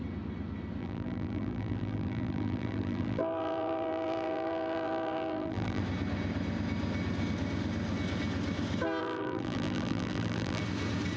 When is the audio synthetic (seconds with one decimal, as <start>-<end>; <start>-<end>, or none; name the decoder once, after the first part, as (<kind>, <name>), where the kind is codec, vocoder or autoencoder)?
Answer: 0.8-5.8 (vocoder, BigVGAN v2); 9.0-10.6